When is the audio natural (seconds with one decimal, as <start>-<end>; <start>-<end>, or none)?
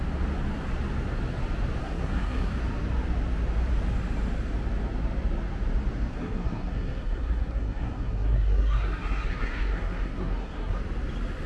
0.0-1.8; 2.5-6.1; 10.8-11.5